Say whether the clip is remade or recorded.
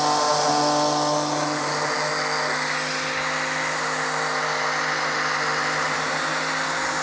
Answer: recorded